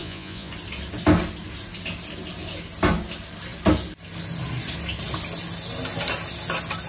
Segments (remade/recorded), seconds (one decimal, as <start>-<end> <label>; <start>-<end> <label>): 0.0-0.5 remade; 0.5-6.9 recorded